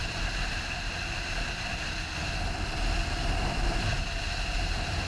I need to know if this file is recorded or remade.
recorded